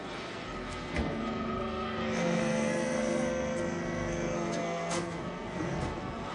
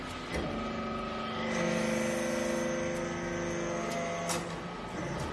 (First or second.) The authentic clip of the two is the second